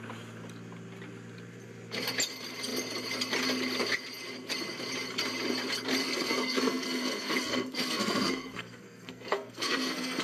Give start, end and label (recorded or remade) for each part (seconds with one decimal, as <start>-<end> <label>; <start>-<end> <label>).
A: 0.0-6.0 recorded; 6.0-10.2 remade